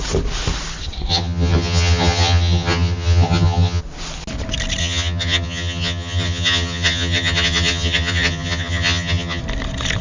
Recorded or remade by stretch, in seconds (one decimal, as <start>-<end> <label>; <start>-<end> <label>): 0.0-1.1 recorded; 1.1-3.8 remade; 3.8-4.8 recorded; 4.8-9.4 remade; 9.4-10.0 recorded